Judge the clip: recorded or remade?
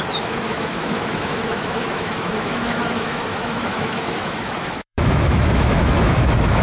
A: remade